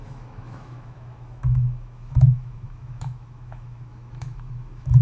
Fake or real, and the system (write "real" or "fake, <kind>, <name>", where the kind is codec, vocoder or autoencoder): fake, autoencoder, DAC-VAE